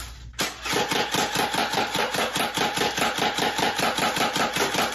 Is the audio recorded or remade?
recorded